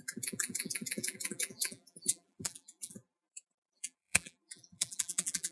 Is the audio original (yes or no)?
no